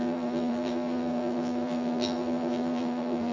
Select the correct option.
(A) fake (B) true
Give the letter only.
A